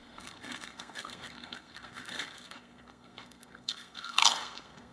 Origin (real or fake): fake